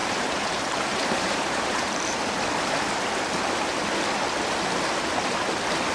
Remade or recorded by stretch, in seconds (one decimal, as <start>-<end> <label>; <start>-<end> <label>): 0.0-2.3 remade; 2.3-5.9 recorded